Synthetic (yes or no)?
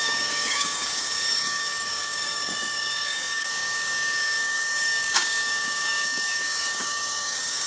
yes